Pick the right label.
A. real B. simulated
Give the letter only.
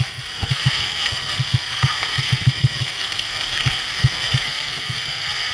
B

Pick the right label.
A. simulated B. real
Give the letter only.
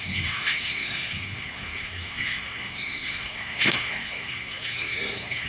A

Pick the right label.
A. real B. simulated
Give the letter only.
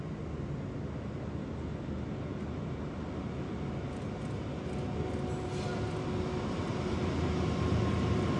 A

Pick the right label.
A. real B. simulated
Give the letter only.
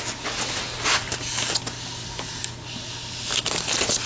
A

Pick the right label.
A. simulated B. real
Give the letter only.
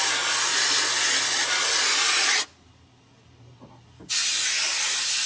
B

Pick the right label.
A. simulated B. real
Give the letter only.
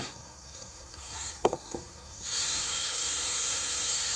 A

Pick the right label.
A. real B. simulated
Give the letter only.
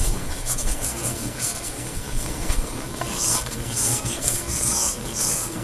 B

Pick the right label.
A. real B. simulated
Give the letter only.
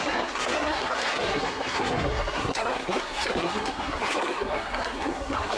B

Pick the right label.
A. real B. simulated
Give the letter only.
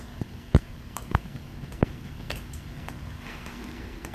B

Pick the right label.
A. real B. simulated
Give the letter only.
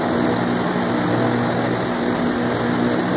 A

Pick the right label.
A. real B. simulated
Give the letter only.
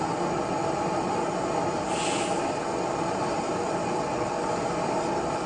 A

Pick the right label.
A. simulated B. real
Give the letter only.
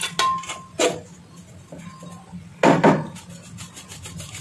B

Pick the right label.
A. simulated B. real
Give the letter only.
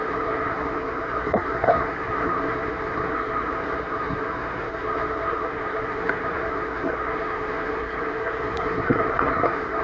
A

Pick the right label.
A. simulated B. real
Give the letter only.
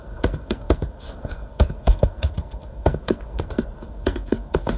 A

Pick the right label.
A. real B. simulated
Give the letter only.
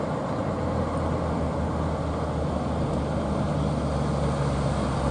A